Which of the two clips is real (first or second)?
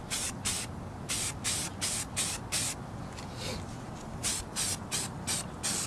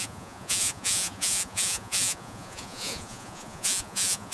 first